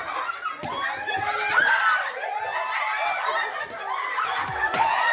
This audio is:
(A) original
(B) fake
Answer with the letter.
A